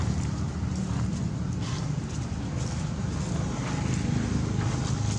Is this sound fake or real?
real